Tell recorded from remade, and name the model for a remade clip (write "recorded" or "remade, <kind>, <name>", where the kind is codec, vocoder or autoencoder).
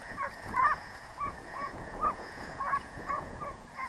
remade, vocoder, Vocos